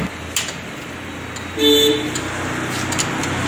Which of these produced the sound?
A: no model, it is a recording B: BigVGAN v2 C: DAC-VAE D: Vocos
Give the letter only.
A